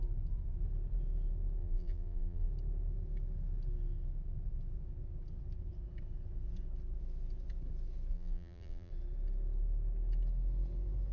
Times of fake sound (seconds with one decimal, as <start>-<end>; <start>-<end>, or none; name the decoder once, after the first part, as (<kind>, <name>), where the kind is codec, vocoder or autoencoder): 1.6-2.5 (vocoder, BigVGAN v2); 8.1-8.9